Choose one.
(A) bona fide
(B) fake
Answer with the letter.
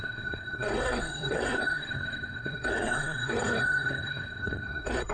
B